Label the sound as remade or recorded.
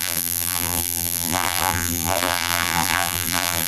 remade